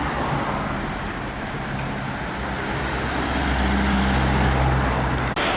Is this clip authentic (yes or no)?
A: yes